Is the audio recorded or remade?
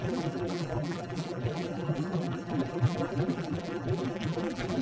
remade